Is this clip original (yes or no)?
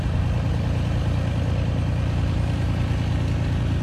yes